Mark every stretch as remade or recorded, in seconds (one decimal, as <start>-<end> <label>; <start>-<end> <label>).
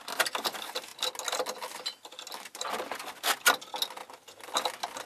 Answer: 0.0-5.1 recorded